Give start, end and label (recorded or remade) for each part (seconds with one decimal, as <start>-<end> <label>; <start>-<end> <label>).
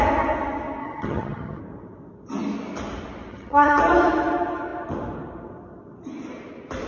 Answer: 0.0-0.8 recorded; 0.8-1.6 remade; 1.6-3.3 recorded; 3.3-3.8 remade; 3.8-6.9 recorded